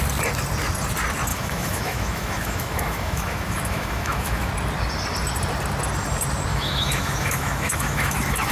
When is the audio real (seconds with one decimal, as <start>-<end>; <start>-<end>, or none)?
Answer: 0.0-1.3; 4.5-6.5